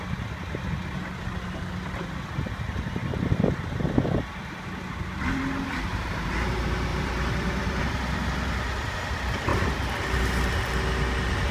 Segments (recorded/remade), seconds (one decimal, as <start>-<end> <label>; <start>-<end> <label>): 0.0-3.0 recorded; 3.0-4.6 remade; 4.6-6.9 recorded; 6.9-7.8 remade; 7.8-9.5 recorded; 9.5-10.3 remade; 10.3-11.5 recorded